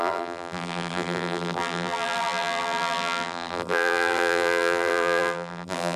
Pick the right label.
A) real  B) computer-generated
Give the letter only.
B